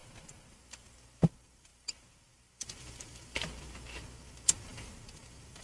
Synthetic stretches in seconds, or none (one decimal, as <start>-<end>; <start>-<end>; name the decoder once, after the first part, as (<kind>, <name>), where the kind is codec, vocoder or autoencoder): 0.5-5.6 (vocoder, BigVGAN v2)

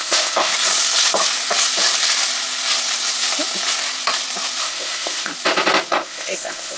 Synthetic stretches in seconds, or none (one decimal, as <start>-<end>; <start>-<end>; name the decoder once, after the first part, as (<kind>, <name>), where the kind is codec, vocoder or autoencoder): 0.0-0.5 (codec, ZipCodec); 4.6-5.3; 5.9-6.8